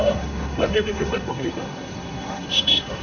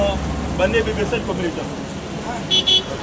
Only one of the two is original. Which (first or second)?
second